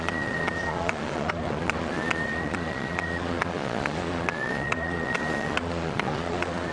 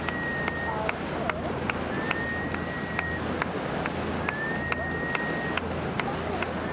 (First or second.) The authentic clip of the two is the second